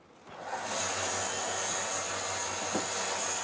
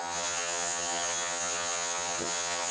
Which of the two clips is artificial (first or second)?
second